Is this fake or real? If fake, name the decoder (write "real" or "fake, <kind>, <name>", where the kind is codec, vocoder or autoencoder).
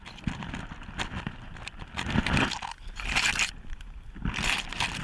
real